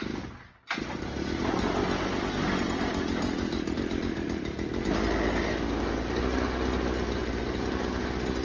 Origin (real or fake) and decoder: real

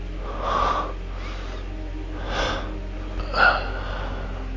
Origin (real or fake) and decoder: real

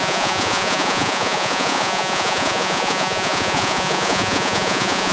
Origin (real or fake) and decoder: fake, vocoder, Vocos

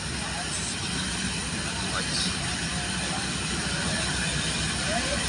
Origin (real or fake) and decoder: real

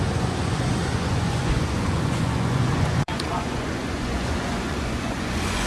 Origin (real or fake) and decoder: fake, vocoder, Vocos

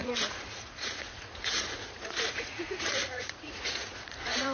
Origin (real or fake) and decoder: fake, vocoder, Vocos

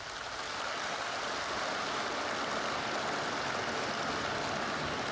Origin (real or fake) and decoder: real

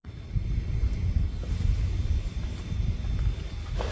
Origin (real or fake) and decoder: real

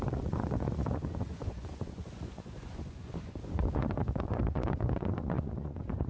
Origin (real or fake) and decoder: fake, vocoder, Vocos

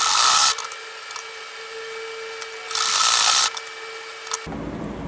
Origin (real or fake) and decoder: real